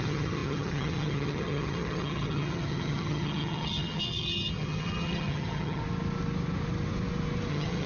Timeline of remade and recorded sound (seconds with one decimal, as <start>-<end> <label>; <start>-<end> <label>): 0.0-5.8 remade; 5.8-7.5 recorded; 7.5-7.9 remade